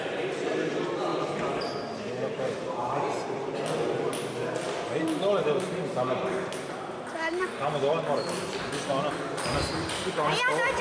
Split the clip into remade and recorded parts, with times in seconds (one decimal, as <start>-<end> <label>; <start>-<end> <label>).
0.0-10.8 recorded